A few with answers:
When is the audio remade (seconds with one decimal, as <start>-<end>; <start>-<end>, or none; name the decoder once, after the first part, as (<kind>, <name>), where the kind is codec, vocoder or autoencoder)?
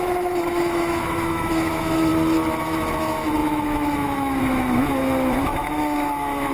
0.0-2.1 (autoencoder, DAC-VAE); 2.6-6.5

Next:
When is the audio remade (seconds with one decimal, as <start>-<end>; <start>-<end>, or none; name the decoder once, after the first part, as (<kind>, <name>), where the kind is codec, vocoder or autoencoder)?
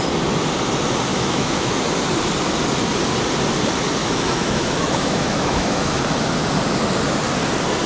1.1-1.8 (autoencoder, DAC-VAE); 4.0-6.0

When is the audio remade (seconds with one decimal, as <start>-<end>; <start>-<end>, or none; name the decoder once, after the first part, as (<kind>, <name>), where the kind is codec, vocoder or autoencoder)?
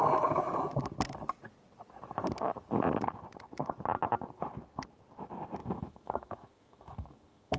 5.6-7.6 (autoencoder, DAC-VAE)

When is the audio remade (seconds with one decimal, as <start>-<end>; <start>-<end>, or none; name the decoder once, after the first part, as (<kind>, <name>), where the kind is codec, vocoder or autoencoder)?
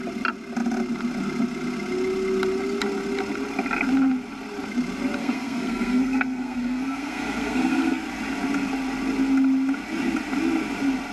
5.2-8.0 (codec, SNAC)